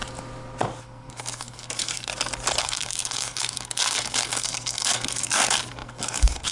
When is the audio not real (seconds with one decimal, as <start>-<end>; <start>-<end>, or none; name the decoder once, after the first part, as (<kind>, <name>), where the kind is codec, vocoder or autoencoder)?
0.8-2.1 (codec, SNAC); 2.6-6.5